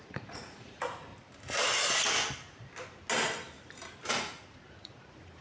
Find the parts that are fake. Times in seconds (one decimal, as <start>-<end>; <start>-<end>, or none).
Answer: 0.0-1.1; 4.1-5.4